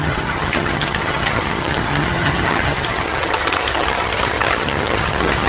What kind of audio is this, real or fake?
fake